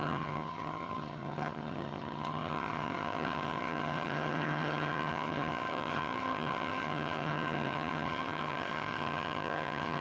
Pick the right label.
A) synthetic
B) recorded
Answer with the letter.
A